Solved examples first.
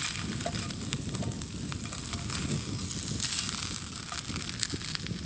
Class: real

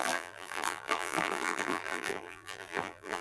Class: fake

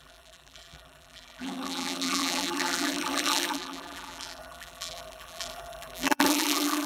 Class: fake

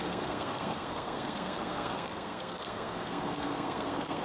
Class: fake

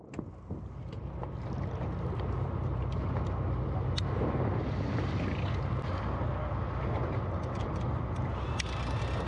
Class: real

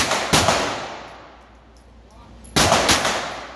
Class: real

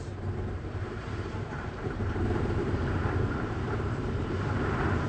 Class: fake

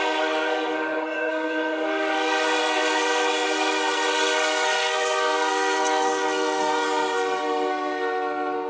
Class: fake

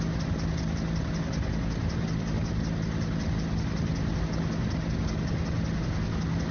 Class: real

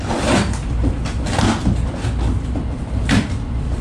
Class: real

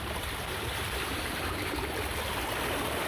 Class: fake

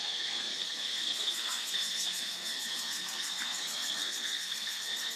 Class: fake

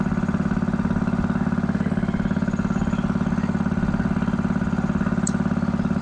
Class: real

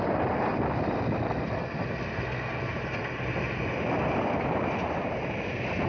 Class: real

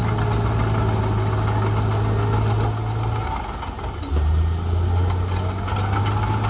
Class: real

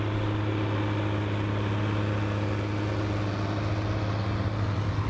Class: real